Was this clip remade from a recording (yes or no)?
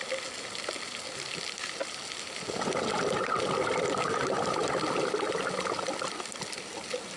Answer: no